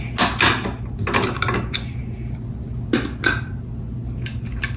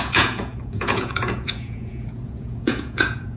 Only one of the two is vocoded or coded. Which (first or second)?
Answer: second